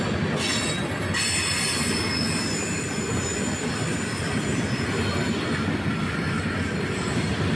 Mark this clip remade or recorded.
recorded